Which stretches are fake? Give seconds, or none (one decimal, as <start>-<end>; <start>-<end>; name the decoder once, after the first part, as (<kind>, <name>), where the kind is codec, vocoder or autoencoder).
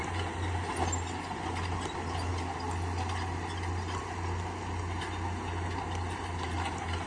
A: none